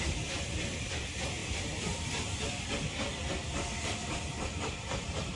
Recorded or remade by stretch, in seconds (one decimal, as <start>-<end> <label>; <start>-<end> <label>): 0.0-1.4 remade; 1.4-4.6 recorded; 4.6-5.4 remade